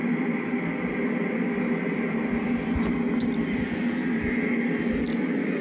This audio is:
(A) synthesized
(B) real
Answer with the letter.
B